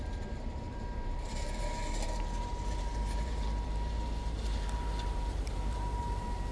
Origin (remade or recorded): remade